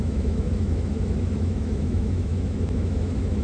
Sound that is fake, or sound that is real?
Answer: fake